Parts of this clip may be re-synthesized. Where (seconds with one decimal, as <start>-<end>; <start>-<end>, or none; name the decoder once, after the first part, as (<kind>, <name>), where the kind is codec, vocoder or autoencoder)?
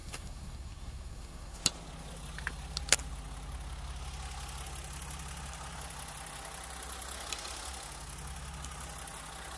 0.0-1.6 (codec, SNAC)